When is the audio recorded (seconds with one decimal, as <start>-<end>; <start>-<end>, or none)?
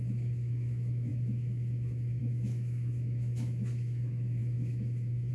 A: none